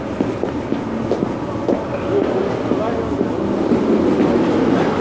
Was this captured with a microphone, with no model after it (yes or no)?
yes